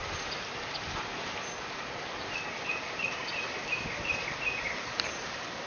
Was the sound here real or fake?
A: real